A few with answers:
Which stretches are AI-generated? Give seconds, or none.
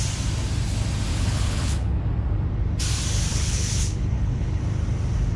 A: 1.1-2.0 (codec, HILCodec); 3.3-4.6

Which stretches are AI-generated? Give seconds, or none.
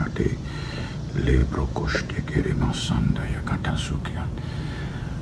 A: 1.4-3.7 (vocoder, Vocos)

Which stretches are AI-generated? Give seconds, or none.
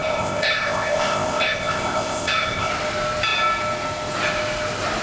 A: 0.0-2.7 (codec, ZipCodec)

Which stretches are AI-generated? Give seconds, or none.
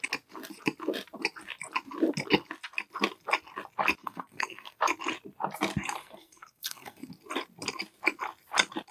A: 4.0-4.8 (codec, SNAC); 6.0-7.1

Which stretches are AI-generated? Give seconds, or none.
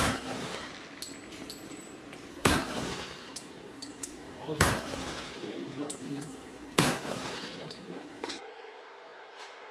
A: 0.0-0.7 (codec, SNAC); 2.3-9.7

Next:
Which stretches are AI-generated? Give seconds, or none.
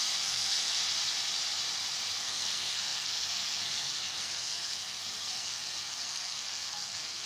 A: 0.0-0.8 (codec, SNAC); 2.2-7.3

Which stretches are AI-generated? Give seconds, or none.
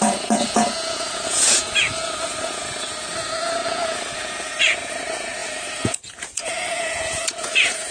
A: 0.0-7.9 (vocoder, Vocos)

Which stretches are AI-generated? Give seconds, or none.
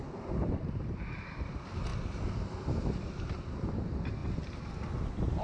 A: 1.9-3.7 (vocoder, BigVGAN v2); 4.2-4.9